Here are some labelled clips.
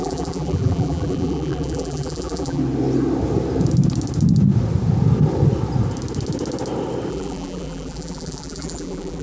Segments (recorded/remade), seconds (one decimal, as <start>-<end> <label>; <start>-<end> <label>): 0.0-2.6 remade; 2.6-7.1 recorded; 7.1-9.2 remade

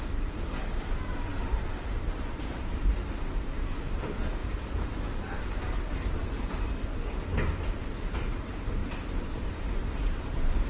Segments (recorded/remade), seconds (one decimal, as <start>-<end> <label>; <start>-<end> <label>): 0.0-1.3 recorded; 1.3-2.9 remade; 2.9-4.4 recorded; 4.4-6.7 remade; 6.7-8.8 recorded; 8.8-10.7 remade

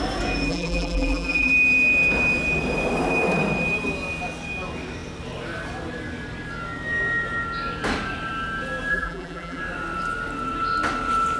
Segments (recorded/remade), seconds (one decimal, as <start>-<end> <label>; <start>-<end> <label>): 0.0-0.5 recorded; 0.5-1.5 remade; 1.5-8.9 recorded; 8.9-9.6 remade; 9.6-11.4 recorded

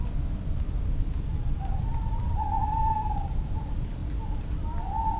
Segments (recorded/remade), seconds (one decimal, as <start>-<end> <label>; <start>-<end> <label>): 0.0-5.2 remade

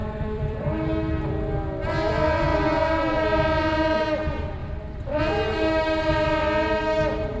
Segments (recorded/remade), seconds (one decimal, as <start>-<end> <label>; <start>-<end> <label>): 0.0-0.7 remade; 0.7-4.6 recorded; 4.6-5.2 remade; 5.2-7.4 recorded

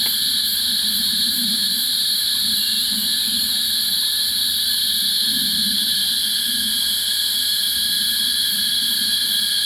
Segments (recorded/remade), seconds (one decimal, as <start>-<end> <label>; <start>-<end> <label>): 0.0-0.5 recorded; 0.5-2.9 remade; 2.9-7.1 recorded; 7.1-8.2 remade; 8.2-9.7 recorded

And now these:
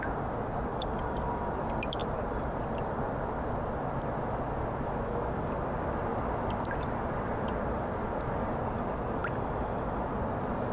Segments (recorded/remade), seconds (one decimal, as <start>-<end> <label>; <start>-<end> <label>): 0.0-0.7 recorded; 0.7-1.4 remade; 1.4-9.2 recorded; 9.2-10.0 remade; 10.0-10.7 recorded

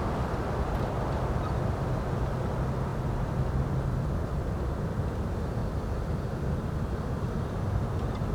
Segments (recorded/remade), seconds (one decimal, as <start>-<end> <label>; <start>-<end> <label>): 0.0-2.9 recorded; 2.9-4.3 remade; 4.3-8.3 recorded